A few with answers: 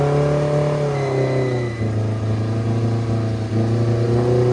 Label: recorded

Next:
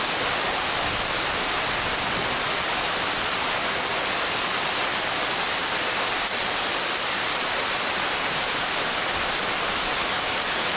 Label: recorded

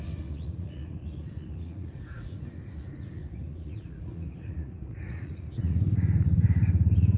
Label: remade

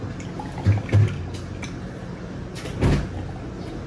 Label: recorded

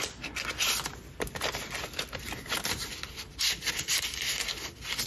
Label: recorded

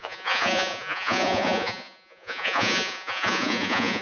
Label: remade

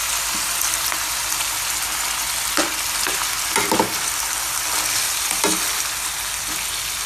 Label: recorded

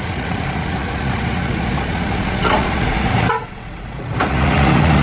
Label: remade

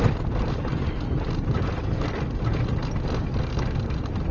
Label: recorded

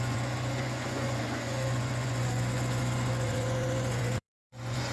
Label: remade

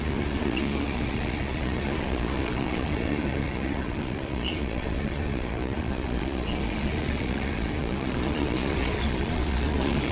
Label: remade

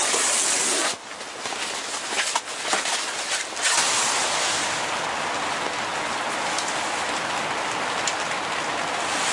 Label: recorded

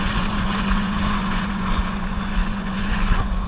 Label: remade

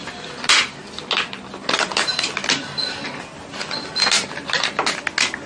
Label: recorded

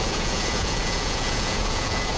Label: remade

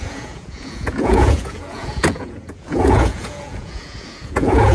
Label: remade